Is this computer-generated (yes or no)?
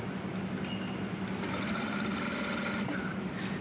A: no